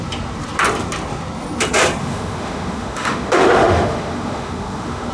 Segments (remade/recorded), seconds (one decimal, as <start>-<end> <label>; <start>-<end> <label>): 0.0-2.0 recorded; 2.0-5.1 remade